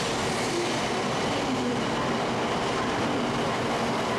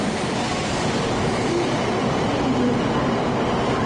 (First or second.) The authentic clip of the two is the first